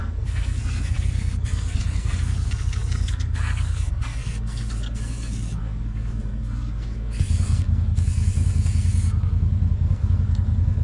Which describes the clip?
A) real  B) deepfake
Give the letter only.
B